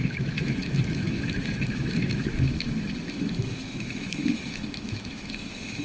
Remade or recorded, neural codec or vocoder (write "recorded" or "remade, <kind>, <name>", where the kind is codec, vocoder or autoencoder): remade, autoencoder, DAC-VAE